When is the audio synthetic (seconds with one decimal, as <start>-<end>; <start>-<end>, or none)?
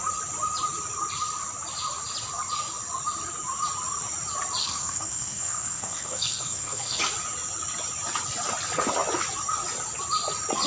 4.6-7.0